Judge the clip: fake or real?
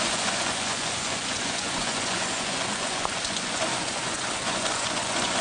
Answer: fake